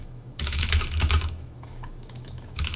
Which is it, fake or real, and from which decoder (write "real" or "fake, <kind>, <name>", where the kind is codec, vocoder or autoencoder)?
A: fake, autoencoder, DAC-VAE